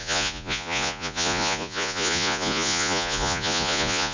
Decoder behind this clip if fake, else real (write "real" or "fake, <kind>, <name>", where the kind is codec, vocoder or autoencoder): fake, vocoder, Vocos